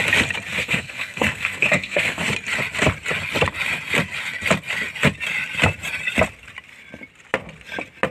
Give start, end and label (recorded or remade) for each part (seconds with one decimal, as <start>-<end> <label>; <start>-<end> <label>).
0.0-0.5 recorded; 0.5-2.2 remade; 2.2-8.1 recorded